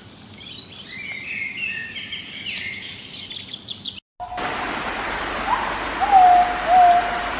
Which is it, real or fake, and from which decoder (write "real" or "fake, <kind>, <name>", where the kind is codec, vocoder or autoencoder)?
real